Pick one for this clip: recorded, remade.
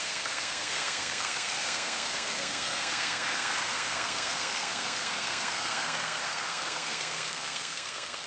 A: remade